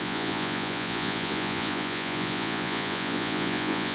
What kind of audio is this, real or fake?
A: fake